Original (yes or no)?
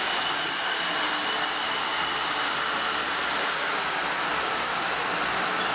yes